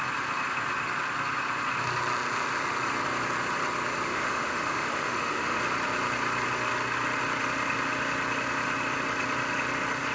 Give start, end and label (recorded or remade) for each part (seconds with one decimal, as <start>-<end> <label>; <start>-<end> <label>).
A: 0.0-4.1 recorded; 4.1-5.6 remade; 5.6-10.1 recorded